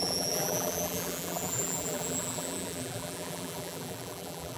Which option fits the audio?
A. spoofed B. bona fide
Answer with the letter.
A